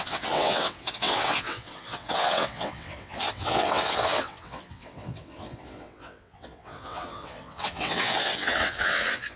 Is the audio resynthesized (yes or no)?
yes